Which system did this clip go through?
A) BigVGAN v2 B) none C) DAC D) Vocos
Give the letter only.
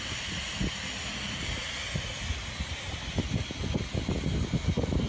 B